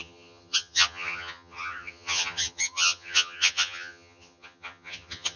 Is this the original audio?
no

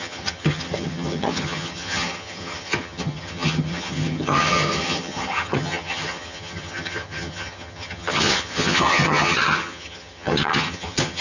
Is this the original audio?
no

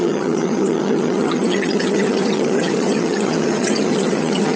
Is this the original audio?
no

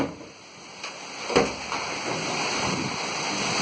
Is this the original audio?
yes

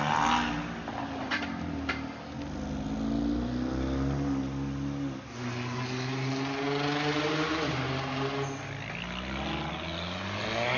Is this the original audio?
yes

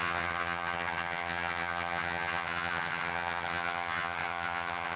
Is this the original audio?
no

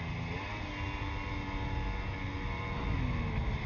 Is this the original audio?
yes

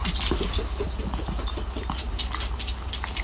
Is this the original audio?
yes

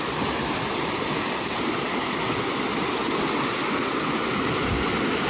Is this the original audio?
yes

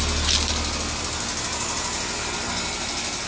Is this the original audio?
yes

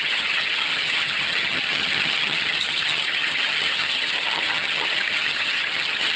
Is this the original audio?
no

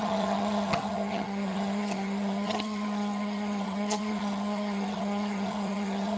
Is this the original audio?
no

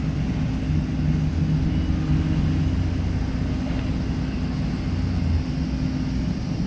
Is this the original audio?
yes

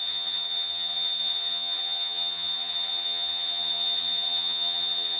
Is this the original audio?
no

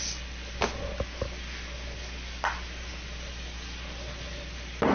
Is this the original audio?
yes